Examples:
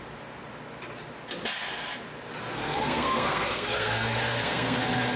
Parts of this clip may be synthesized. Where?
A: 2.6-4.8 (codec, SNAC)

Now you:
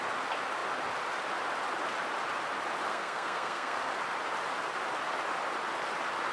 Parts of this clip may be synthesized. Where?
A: 2.9-3.9 (codec, SNAC)

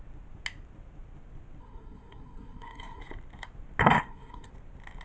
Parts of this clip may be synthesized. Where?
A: 1.6-3.0 (codec, SNAC); 3.8-4.5

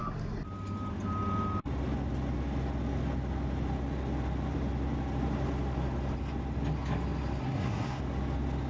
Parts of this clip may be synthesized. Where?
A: 7.4-8.0 (codec, SNAC)

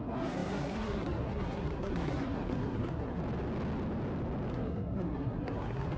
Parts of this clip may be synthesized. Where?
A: 0.0-3.2 (codec, SNAC); 4.5-6.0

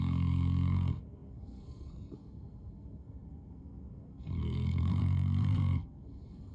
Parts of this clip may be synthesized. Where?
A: 0.0-6.5 (codec, SNAC)